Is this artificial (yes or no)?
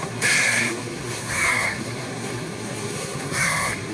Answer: yes